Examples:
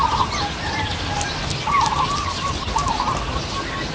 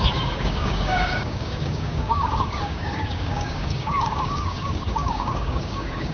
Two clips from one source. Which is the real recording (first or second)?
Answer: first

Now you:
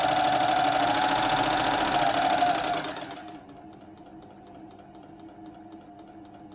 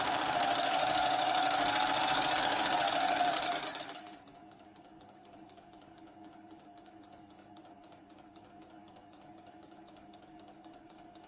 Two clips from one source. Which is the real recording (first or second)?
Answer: first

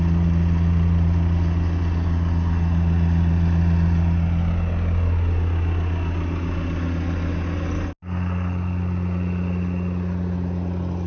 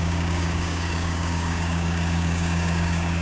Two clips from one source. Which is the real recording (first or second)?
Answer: first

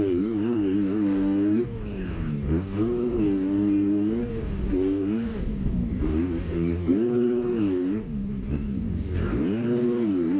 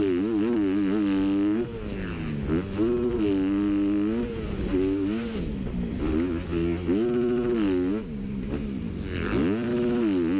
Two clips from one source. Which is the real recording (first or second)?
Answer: second